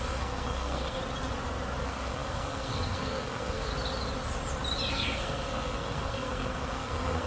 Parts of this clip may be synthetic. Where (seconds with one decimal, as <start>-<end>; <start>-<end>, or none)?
0.0-1.0; 1.8-3.7; 4.9-7.3

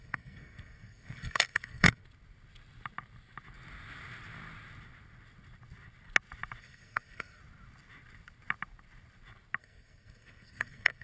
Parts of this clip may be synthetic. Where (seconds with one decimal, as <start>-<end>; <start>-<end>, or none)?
0.0-2.0; 6.6-7.4; 9.6-11.0

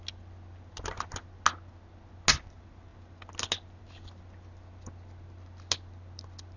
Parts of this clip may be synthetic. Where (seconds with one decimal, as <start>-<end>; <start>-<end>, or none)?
none

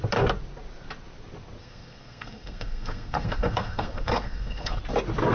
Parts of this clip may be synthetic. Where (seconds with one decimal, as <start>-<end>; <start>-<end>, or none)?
1.6-4.8

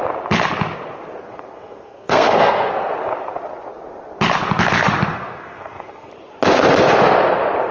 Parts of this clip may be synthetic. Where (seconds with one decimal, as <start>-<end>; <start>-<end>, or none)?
1.2-2.9; 5.1-6.1